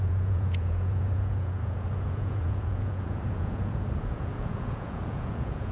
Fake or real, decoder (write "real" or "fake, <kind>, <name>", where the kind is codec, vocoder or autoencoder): fake, vocoder, Vocos